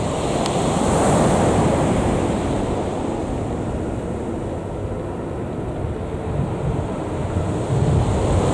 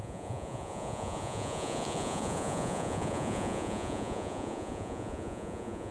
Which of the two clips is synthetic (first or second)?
second